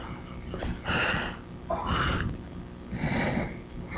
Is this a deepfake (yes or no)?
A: no